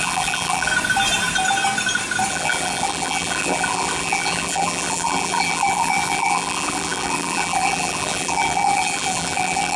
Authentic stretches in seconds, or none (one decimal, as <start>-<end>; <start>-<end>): 0.7-2.3